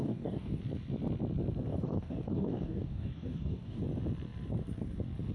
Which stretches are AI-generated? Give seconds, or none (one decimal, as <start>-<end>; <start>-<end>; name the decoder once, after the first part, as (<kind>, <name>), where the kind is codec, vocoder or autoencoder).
0.0-0.6 (codec, DAC); 1.7-3.8